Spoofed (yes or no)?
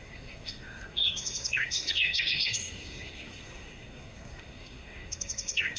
yes